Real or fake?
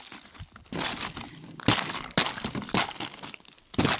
real